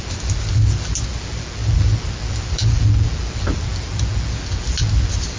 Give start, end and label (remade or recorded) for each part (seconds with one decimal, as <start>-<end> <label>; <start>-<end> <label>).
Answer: 0.0-5.4 recorded